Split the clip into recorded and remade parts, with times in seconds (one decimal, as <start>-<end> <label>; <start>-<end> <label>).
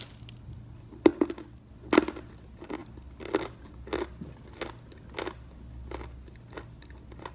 0.0-7.3 recorded